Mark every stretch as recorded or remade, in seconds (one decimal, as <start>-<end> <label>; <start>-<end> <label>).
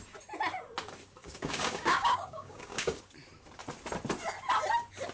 0.0-1.2 recorded; 1.2-3.0 remade; 3.0-5.1 recorded